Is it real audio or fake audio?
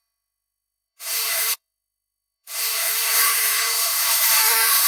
fake